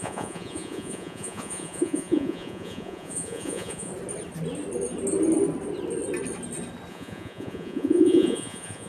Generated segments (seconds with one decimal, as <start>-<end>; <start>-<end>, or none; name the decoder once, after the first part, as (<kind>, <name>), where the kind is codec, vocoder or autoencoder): 0.0-3.9 (vocoder, Vocos); 6.9-8.9